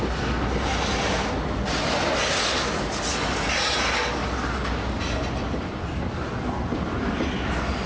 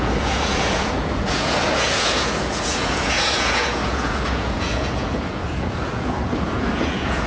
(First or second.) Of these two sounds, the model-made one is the second